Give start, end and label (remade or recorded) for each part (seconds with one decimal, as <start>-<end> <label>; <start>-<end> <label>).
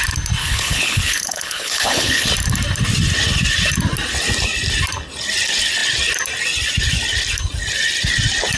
0.0-0.4 recorded; 0.4-2.3 remade; 2.3-8.6 recorded